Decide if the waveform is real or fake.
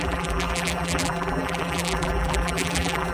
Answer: fake